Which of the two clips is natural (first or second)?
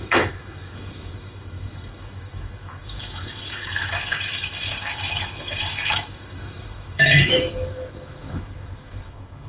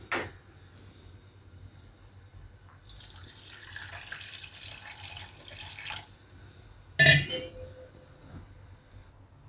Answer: second